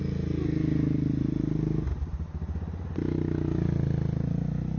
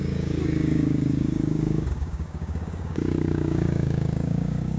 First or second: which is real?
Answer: first